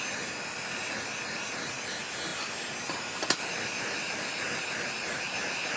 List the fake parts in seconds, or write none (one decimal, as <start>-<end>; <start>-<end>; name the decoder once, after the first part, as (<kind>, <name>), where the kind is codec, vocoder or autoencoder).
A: none